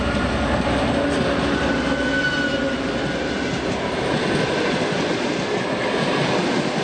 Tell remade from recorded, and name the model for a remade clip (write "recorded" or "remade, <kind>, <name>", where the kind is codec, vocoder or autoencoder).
recorded